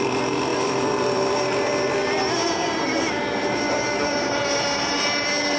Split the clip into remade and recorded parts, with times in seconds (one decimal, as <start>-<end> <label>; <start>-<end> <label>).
0.0-5.6 recorded